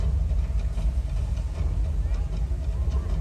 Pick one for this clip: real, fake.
real